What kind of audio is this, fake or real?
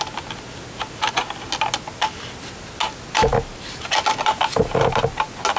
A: real